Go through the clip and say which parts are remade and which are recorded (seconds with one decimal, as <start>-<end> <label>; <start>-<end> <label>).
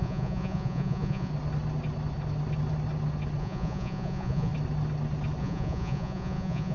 0.0-1.3 remade; 1.3-3.4 recorded; 3.4-4.5 remade; 4.5-5.4 recorded; 5.4-6.7 remade